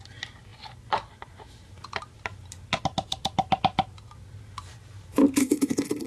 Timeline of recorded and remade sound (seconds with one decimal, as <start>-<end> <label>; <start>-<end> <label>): 0.0-5.4 recorded; 5.4-6.1 remade